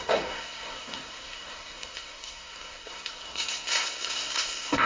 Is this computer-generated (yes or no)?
yes